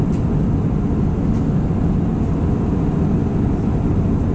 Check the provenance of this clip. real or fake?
real